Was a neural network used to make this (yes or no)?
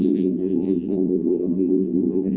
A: yes